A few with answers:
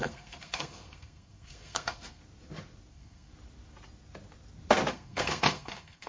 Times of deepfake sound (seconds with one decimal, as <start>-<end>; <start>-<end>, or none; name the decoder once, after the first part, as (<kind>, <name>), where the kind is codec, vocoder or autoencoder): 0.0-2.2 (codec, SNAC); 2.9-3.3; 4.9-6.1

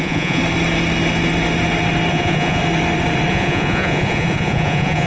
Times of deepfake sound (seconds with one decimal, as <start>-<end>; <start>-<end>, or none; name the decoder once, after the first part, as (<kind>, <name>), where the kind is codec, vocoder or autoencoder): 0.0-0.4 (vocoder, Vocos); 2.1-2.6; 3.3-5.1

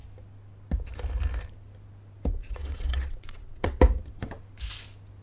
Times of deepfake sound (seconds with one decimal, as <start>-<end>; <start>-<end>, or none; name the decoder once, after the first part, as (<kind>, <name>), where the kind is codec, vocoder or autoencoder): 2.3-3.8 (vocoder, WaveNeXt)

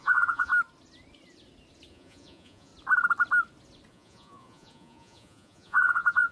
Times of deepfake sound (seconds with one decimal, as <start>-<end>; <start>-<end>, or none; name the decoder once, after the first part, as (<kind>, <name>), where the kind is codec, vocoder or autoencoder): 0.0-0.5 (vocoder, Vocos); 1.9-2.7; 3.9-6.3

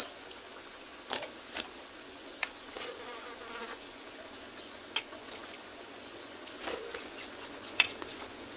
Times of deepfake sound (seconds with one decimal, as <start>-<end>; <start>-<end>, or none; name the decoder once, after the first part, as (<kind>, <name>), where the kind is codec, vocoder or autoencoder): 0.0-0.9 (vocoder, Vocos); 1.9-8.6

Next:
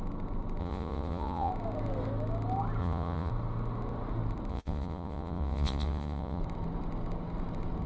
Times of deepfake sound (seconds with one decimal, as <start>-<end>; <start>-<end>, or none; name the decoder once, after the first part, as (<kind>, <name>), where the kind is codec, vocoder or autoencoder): 0.6-1.5 (vocoder, Vocos); 2.8-3.3; 4.5-6.4